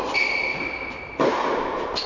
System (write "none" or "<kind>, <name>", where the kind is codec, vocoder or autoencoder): none